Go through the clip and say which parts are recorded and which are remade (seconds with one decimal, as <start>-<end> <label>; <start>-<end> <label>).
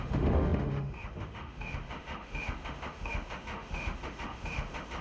0.0-5.0 remade